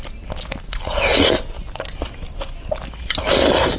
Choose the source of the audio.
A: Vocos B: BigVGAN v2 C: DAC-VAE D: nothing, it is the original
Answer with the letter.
D